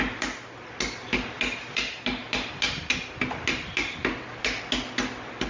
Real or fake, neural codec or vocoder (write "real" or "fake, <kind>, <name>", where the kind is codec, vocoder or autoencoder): real